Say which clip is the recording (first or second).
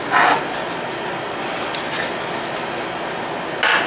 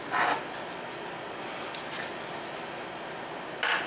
first